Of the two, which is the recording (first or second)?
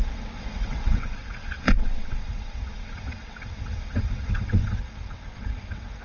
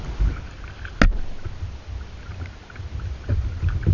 second